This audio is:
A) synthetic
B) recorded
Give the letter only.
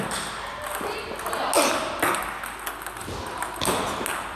B